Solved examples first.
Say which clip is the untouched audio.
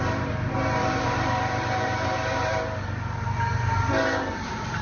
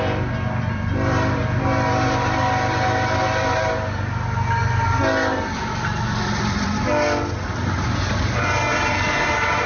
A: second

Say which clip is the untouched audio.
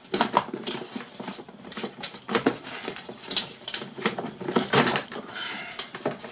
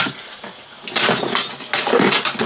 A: second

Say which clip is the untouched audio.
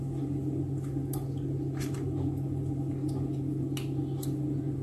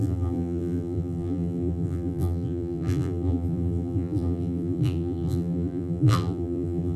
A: first